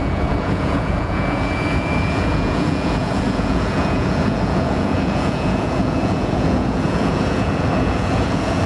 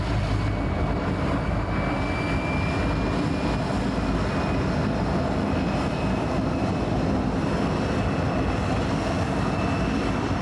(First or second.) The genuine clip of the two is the second